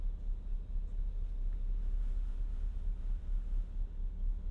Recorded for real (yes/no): yes